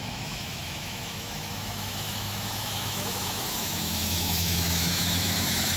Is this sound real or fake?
fake